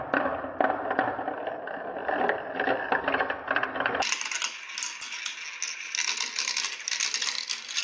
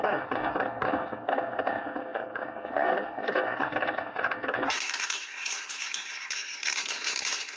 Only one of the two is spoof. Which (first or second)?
second